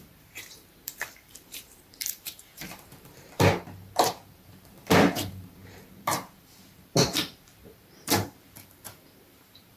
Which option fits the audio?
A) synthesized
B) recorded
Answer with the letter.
A